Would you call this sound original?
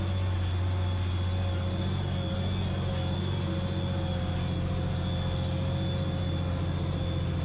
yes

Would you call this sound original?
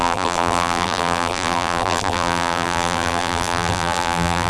no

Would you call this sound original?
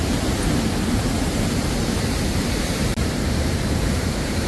no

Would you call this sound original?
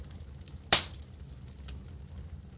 yes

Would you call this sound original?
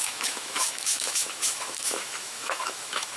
no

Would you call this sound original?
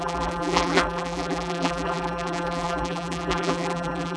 no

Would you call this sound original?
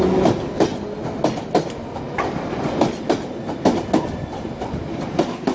yes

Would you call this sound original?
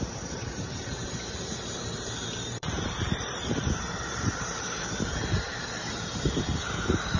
no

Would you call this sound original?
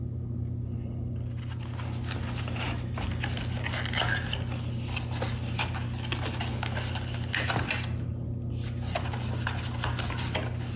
yes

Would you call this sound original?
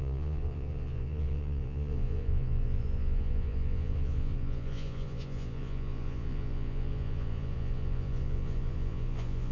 no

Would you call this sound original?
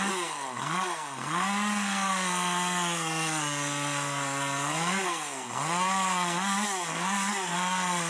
no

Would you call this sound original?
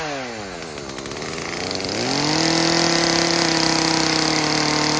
yes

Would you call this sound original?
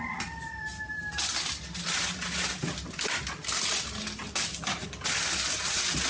yes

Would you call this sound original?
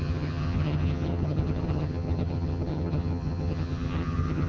no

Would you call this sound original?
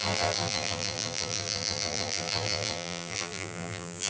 no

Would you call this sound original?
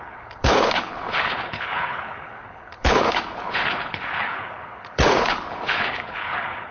no